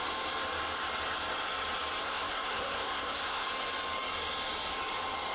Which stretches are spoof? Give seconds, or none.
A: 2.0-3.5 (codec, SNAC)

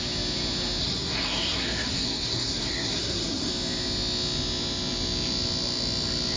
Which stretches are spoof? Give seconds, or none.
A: 0.8-3.5 (codec, SNAC)

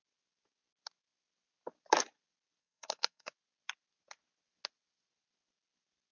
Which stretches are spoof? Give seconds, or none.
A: 2.6-3.3 (codec, SNAC)

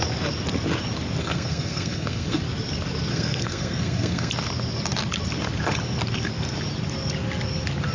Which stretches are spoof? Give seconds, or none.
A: 1.2-2.4 (codec, SNAC); 3.1-4.3

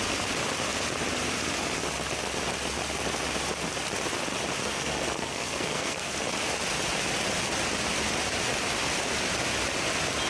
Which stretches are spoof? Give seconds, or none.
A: 4.6-6.1 (codec, SNAC)

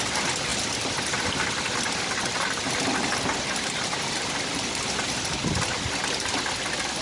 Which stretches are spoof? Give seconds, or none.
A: none

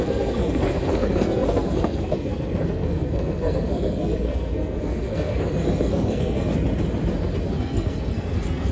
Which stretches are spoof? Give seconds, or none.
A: 0.0-6.5 (codec, SNAC); 7.5-8.7

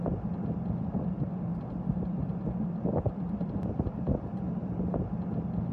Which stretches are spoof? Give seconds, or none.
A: none